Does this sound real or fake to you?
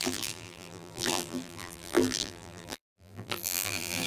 fake